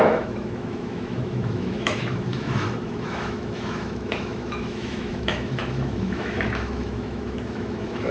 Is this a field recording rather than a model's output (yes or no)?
no